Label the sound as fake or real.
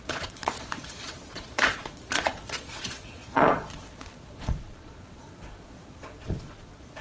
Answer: fake